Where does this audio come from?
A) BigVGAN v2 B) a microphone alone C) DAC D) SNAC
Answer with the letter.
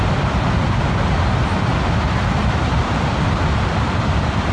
B